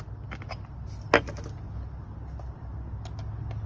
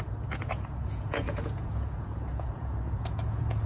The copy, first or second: second